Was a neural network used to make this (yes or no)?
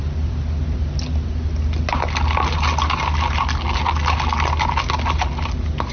no